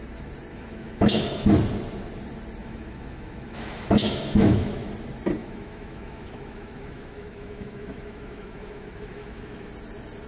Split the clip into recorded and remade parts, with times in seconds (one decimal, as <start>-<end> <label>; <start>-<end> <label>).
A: 0.0-0.5 recorded; 0.5-1.5 remade; 1.5-2.6 recorded; 2.6-4.9 remade; 4.9-5.4 recorded; 5.4-9.7 remade; 9.7-10.3 recorded